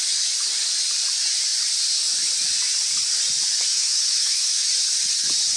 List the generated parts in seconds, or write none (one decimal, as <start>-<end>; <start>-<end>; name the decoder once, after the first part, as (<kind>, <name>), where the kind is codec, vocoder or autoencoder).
3.7-4.7 (autoencoder, DAC-VAE)